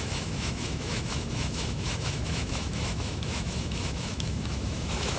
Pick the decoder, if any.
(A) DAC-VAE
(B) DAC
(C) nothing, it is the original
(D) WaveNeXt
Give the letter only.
A